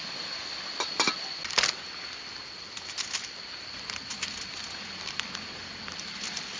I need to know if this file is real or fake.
real